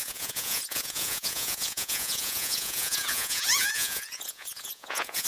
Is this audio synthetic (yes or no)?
yes